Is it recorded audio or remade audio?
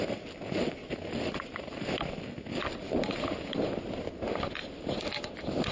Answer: recorded